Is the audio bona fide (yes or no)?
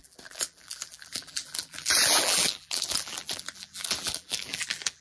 no